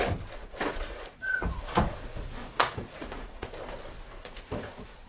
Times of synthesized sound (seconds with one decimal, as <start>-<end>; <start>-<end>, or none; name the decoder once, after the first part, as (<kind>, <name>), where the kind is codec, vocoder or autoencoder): 0.4-3.5 (vocoder, Vocos); 4.2-5.1